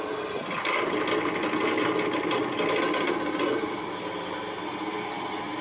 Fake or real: real